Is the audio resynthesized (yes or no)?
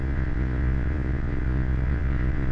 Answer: yes